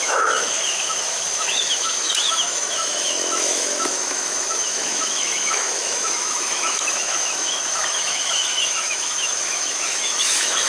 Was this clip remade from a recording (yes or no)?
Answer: yes